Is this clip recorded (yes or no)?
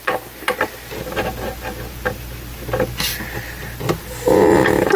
yes